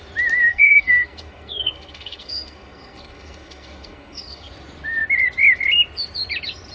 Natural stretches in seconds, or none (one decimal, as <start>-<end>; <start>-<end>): 0.0-0.5; 4.5-6.7